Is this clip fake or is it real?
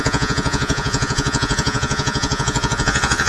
fake